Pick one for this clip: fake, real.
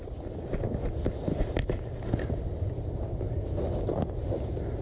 real